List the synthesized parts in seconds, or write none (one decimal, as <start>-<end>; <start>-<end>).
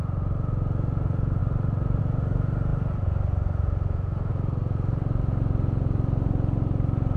1.4-2.0